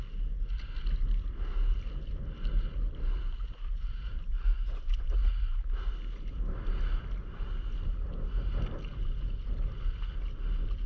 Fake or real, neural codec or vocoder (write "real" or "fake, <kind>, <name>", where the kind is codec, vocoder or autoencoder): real